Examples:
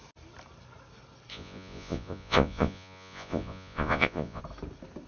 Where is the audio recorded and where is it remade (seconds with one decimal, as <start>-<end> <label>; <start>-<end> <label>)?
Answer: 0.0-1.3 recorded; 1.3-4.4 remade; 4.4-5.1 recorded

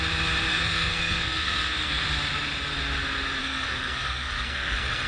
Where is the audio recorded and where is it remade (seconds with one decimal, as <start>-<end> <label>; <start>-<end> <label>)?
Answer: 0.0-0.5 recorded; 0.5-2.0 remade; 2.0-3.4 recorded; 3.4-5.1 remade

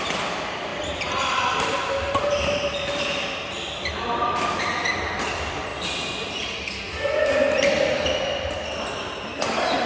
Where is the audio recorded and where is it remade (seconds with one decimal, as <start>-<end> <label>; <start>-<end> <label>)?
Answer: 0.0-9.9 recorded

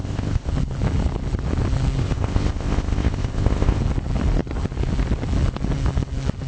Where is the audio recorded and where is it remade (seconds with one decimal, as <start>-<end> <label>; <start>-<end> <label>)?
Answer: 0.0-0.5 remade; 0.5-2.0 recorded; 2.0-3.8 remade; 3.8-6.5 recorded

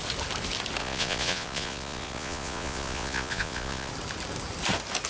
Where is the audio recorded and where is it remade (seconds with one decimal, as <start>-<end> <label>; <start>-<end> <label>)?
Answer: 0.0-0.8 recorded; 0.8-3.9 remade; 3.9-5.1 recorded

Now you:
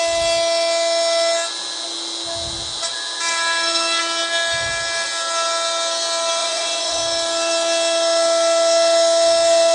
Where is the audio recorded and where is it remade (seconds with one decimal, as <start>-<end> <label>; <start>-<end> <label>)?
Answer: 0.0-6.4 recorded; 6.4-7.0 remade; 7.0-9.7 recorded

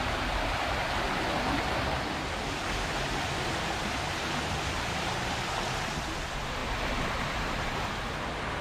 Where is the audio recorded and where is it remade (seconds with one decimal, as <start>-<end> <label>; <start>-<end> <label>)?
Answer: 0.0-8.6 recorded